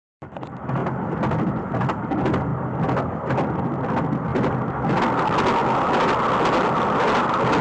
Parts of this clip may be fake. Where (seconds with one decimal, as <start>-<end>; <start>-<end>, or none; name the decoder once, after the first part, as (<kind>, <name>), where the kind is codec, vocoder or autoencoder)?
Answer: 0.0-0.8 (vocoder, BigVGAN v2); 1.5-2.5; 3.3-5.6